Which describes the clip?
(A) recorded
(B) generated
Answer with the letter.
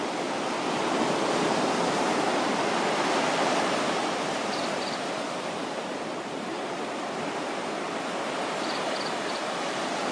B